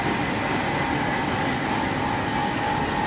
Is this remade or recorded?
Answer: recorded